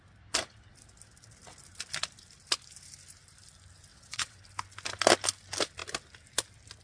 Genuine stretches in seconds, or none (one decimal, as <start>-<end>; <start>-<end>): 0.0-3.9; 4.4-6.8

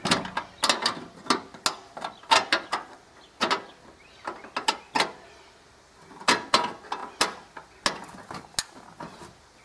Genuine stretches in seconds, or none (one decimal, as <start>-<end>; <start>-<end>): 0.0-9.6